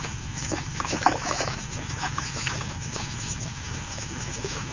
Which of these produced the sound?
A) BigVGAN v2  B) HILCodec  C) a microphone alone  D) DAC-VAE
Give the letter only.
D